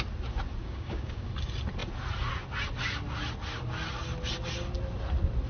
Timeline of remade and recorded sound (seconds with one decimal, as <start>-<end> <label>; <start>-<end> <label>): 0.0-0.6 recorded; 0.6-1.3 remade; 1.3-5.5 recorded